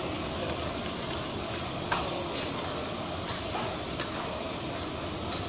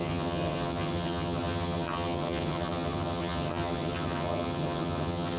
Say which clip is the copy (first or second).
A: second